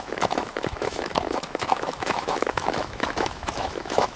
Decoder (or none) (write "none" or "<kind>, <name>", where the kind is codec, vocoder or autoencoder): autoencoder, DAC-VAE